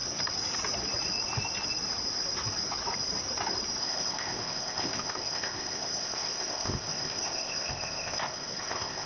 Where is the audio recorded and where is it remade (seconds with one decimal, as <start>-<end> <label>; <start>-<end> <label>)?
0.0-3.8 recorded; 3.8-9.1 remade

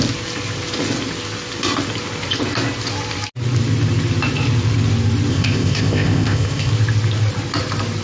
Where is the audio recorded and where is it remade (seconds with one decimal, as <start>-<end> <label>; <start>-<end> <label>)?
0.0-5.3 recorded; 5.3-6.7 remade; 6.7-8.0 recorded

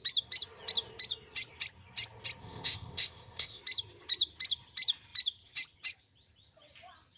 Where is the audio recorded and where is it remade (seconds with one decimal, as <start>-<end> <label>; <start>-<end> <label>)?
0.0-2.4 recorded; 2.4-3.6 remade; 3.6-7.2 recorded

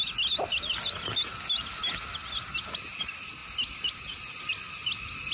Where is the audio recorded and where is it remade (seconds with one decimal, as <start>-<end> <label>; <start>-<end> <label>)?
0.0-5.3 recorded

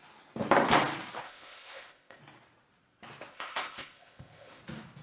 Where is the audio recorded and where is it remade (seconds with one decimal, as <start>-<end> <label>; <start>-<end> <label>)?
0.0-1.2 recorded; 1.2-2.2 remade; 2.2-3.3 recorded; 3.3-4.6 remade; 4.6-5.0 recorded

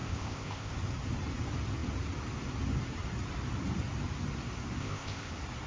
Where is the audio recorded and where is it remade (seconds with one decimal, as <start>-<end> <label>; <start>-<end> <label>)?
0.0-0.7 remade; 0.7-4.8 recorded; 4.8-5.3 remade; 5.3-5.7 recorded